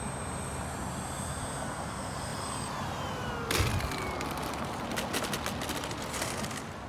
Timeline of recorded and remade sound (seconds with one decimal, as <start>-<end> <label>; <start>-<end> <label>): 0.0-2.3 recorded; 2.3-3.3 remade; 3.3-6.9 recorded